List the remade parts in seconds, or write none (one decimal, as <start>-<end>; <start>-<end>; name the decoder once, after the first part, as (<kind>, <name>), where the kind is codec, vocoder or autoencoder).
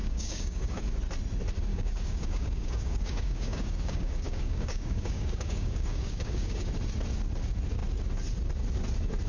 0.0-0.8 (codec, DAC); 1.7-6.7